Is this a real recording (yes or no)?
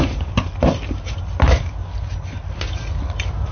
yes